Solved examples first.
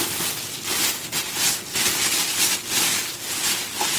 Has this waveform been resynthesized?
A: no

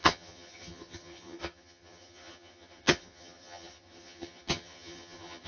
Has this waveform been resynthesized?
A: yes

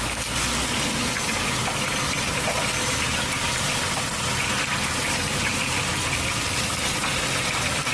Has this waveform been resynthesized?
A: no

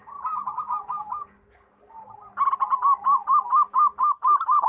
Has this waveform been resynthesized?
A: no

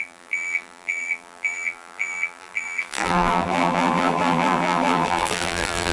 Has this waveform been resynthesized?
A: yes